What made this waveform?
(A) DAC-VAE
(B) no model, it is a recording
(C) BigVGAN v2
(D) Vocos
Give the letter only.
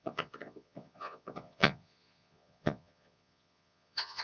D